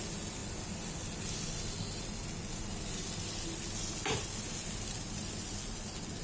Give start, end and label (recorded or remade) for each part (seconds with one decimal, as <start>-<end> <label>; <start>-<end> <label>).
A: 0.0-6.2 recorded